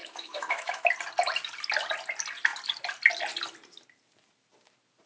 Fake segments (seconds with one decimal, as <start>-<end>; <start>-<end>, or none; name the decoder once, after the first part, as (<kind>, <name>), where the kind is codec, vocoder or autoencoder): 0.0-0.9 (autoencoder, DAC-VAE)